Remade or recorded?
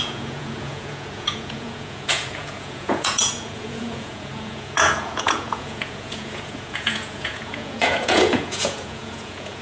remade